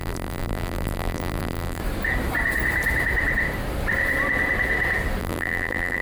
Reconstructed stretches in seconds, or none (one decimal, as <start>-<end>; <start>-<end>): 0.0-1.8; 5.2-6.0